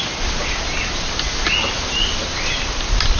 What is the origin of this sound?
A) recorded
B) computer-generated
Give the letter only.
A